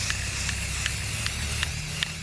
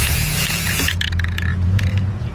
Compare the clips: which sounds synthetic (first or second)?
second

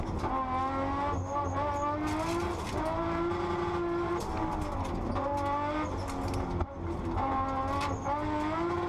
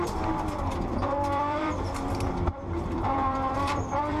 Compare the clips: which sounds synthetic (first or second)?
second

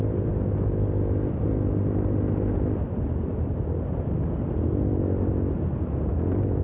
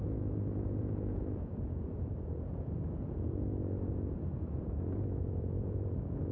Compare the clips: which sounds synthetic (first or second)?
second